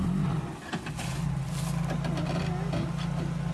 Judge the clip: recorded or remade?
recorded